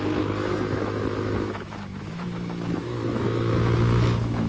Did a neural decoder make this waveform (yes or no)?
yes